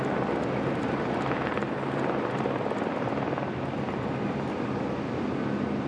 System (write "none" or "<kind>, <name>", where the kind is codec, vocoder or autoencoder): none